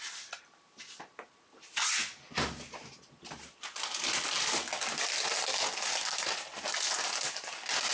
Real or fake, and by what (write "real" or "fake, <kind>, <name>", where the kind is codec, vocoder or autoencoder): real